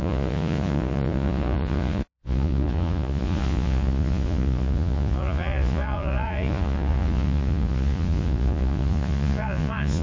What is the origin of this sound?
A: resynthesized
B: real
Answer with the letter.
A